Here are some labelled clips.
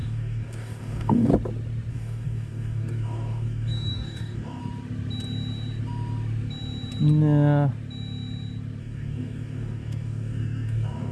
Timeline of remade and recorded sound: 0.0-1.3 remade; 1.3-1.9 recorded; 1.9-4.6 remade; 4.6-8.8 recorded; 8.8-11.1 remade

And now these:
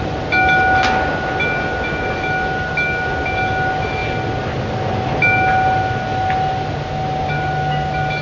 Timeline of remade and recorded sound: 0.0-8.2 recorded

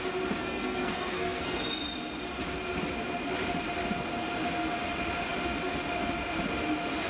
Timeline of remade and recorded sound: 0.0-0.4 recorded; 0.4-1.8 remade; 1.8-7.1 recorded

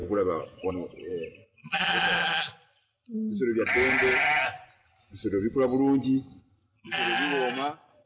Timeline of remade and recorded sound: 0.0-0.7 remade; 0.7-8.1 recorded

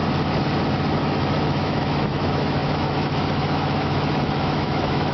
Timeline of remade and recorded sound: 0.0-1.0 recorded; 1.0-5.1 remade

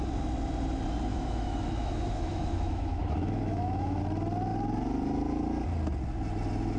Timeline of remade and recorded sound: 0.0-1.1 recorded; 1.1-4.0 remade; 4.0-6.8 recorded

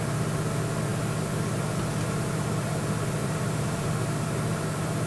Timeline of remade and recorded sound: 0.0-3.2 recorded; 3.2-3.9 remade; 3.9-5.1 recorded